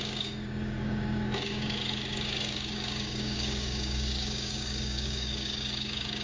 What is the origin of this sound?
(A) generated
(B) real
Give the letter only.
A